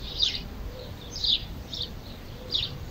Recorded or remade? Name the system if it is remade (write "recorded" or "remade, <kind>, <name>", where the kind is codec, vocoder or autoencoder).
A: remade, vocoder, BigVGAN v2